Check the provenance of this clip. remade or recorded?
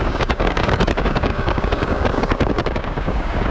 remade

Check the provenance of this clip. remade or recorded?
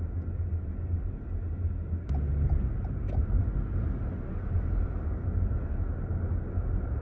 recorded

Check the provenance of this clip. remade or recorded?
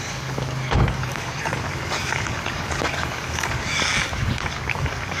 remade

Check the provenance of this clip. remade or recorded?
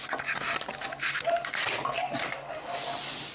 recorded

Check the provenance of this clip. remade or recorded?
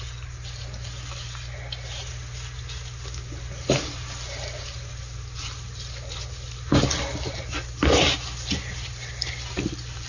recorded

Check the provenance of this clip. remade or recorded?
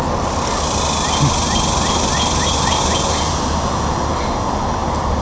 recorded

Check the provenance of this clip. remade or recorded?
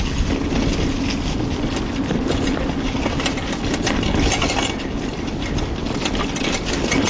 recorded